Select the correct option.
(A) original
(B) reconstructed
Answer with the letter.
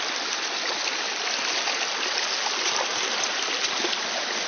A